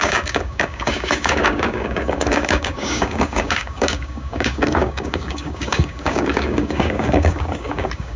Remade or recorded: remade